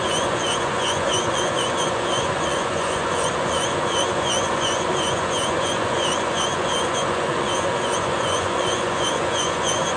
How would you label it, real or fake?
fake